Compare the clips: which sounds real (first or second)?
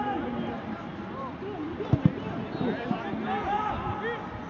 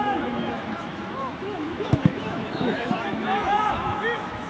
first